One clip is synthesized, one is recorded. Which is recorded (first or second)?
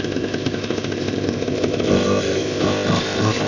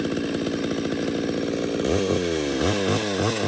second